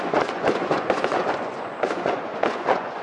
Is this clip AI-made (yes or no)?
yes